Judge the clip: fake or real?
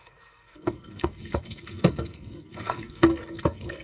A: fake